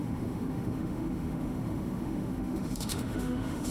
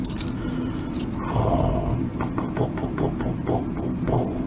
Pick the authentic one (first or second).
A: second